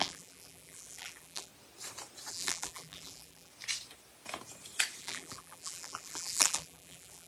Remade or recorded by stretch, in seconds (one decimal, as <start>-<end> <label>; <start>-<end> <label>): 0.0-1.5 remade; 1.5-2.3 recorded; 2.3-3.5 remade; 3.5-5.0 recorded; 5.0-7.3 remade